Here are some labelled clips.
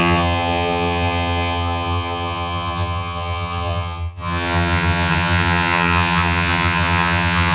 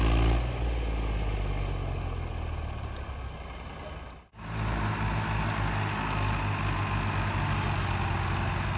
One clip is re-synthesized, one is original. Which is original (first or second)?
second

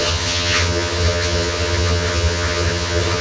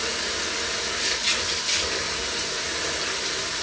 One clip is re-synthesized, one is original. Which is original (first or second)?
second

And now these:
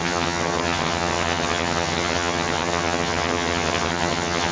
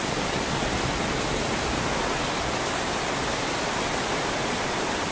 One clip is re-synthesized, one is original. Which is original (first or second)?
second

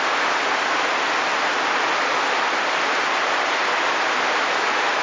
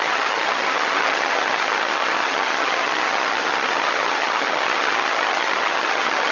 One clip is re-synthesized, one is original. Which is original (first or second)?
first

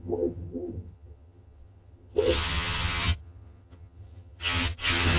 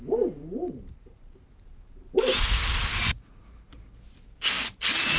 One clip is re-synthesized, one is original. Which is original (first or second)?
second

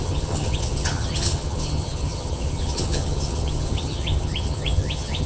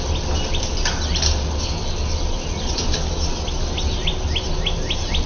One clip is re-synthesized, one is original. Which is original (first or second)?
second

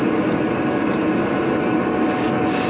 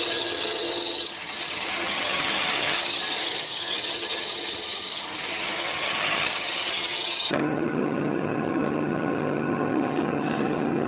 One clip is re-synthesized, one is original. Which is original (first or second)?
first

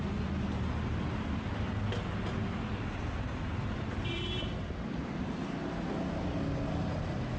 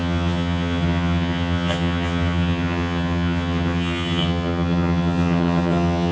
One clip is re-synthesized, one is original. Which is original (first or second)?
first